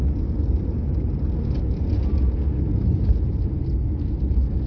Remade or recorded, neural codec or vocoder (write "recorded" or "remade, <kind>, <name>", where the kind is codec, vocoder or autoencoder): recorded